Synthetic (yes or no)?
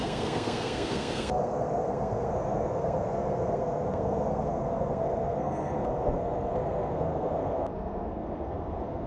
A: yes